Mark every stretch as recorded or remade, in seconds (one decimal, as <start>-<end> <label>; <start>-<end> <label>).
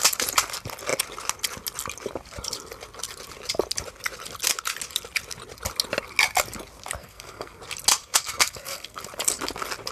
0.0-7.0 recorded; 7.0-7.6 remade; 7.6-8.0 recorded; 8.0-9.0 remade; 9.0-9.9 recorded